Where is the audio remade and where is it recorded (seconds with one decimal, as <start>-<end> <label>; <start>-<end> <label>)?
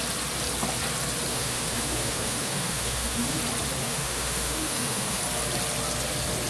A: 0.0-1.3 recorded; 1.3-3.4 remade; 3.4-3.8 recorded; 3.8-5.2 remade; 5.2-6.5 recorded